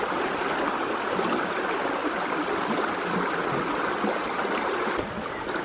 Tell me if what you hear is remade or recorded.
recorded